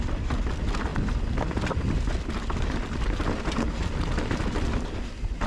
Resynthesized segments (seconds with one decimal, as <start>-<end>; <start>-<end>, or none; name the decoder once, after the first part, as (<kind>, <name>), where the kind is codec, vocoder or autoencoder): none